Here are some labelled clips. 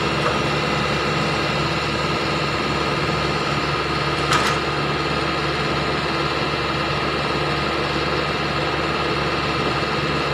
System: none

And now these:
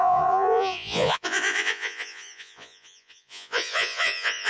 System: vocoder, Vocos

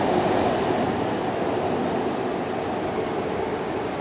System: none